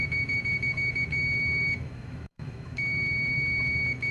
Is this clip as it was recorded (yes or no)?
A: no